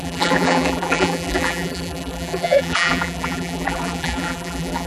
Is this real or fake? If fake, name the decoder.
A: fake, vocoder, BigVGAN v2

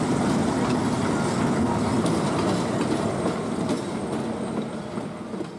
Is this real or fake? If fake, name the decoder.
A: real